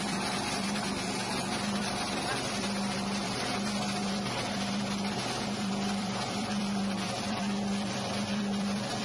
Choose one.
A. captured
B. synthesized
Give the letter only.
B